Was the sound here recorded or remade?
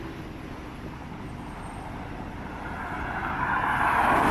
recorded